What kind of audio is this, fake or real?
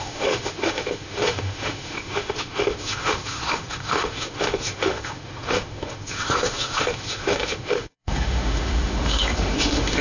fake